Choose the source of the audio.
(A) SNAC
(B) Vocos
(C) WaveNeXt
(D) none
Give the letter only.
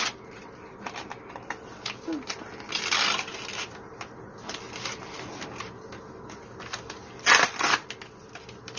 D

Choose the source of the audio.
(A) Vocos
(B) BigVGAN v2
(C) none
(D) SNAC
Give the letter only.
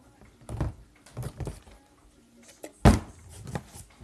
C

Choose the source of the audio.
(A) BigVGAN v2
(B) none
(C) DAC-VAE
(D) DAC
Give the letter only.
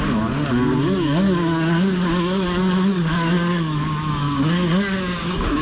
D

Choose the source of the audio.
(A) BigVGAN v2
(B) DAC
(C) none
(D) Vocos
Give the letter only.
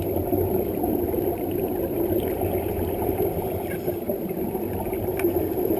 C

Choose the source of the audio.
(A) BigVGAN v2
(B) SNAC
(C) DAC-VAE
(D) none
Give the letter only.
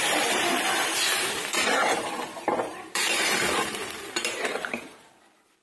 A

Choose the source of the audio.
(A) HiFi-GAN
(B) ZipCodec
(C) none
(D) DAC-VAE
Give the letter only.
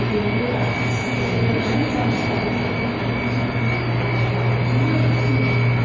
C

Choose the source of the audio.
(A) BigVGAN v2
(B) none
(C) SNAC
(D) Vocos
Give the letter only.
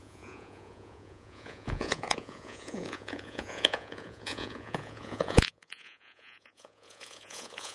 D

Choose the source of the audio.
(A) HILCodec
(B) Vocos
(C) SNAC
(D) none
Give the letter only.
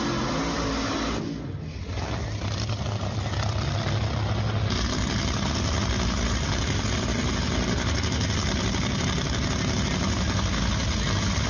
D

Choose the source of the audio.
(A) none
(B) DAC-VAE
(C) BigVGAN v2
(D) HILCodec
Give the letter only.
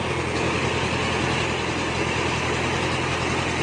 A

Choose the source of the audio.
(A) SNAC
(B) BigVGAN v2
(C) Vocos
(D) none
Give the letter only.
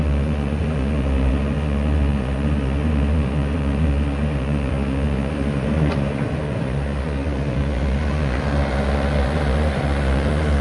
C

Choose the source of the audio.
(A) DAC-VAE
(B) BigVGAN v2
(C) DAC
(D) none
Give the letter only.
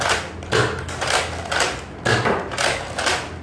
D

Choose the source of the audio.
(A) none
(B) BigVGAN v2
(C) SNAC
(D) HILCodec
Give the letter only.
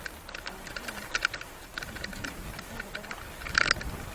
A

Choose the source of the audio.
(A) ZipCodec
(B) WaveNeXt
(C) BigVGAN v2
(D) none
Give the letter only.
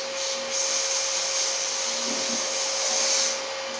D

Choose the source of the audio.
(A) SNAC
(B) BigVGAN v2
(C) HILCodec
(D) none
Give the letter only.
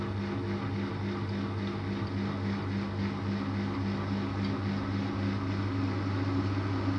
D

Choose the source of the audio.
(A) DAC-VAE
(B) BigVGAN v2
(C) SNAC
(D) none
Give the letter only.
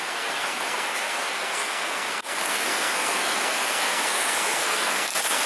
C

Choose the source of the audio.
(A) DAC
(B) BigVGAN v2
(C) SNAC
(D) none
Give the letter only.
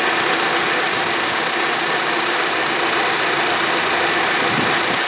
D